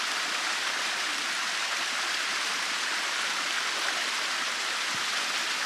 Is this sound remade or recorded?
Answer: remade